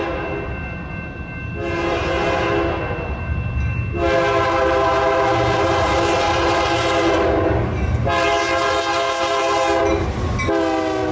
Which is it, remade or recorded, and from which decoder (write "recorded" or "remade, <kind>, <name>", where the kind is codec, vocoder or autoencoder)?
recorded